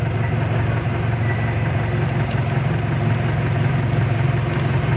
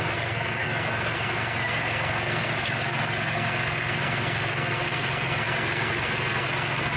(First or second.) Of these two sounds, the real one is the first